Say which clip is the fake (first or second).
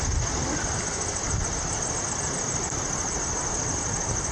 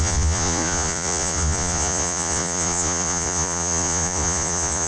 second